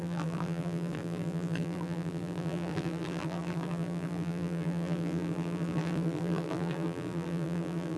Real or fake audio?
fake